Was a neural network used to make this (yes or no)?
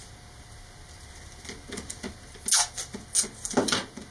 no